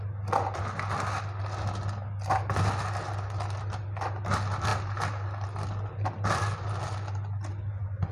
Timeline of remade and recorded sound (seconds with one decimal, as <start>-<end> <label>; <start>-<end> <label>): 0.0-8.1 recorded